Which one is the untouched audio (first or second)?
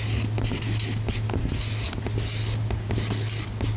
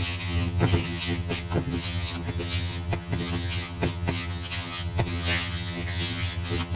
first